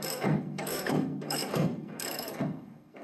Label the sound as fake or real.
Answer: fake